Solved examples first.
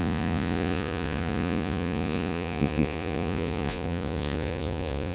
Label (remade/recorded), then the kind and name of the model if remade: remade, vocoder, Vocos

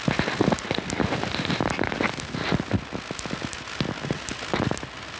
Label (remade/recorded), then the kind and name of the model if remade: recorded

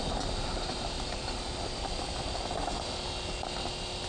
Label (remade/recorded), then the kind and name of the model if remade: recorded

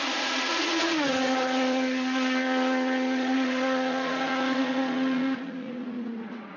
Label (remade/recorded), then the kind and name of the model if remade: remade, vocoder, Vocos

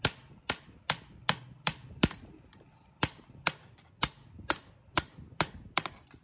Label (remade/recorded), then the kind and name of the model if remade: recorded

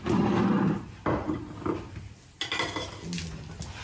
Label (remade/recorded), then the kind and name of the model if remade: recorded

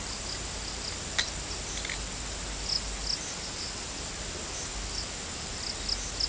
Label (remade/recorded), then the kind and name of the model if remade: recorded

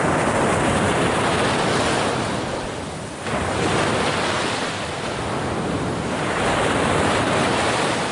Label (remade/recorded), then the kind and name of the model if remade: recorded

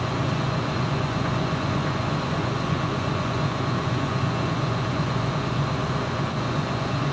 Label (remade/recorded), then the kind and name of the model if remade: remade, vocoder, Vocos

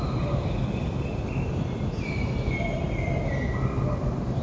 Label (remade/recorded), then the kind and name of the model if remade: recorded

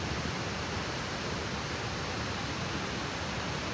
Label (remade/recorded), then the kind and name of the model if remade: recorded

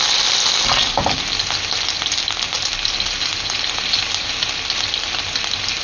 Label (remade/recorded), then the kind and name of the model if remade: recorded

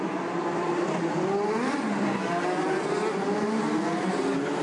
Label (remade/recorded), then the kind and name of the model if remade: recorded